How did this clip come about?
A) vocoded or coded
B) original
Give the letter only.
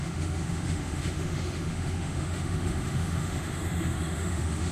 A